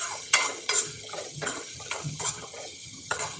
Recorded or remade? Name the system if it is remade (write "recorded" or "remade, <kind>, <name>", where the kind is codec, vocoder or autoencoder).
remade, vocoder, HiFi-GAN